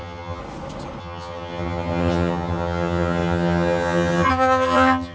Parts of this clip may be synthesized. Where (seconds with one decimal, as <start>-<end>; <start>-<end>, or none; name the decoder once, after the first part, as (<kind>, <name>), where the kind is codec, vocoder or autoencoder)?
0.0-0.4 (vocoder, HiFi-GAN); 1.0-5.1